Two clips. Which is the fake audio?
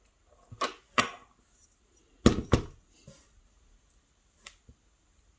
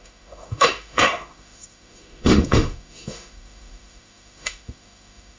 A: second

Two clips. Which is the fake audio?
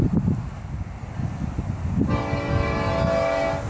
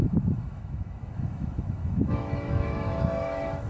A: second